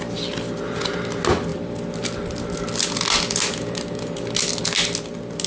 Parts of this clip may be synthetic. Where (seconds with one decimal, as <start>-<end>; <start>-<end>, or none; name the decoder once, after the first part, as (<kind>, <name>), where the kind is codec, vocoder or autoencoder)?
none